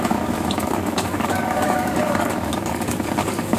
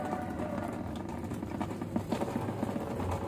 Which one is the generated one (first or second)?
first